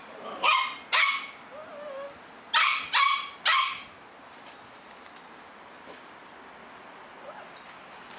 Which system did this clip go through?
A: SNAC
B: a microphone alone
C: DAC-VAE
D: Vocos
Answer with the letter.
B